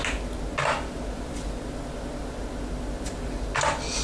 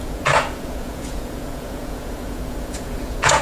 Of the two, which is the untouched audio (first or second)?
first